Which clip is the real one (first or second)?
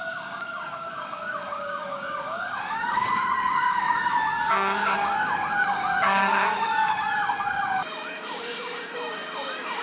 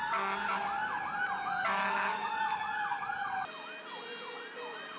second